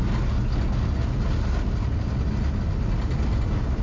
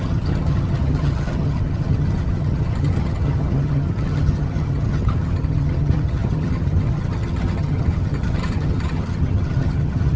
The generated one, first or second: second